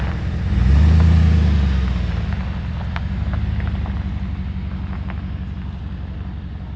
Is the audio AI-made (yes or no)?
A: no